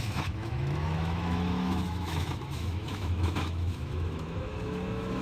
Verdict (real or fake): fake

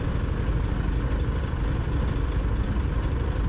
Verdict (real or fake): real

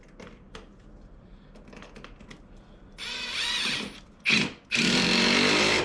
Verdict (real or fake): real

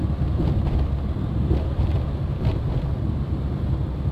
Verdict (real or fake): real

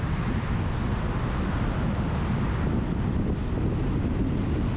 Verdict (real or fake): real